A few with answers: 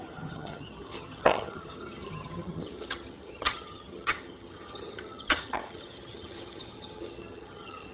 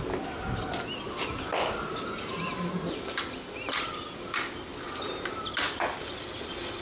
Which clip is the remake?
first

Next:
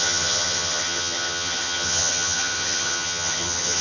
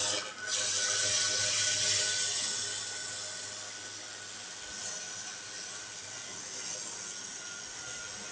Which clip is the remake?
first